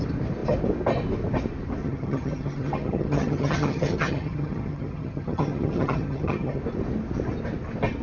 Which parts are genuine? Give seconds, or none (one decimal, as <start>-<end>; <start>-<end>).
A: 0.0-1.8; 6.6-8.0